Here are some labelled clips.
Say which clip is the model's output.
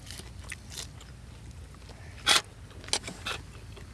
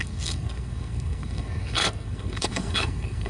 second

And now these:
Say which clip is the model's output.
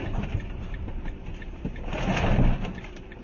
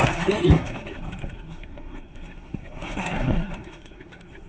second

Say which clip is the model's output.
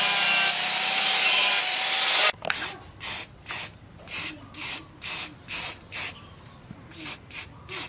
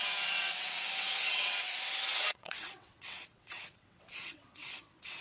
second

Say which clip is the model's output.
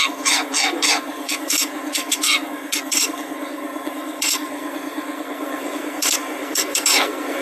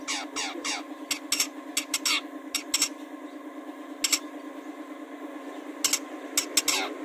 first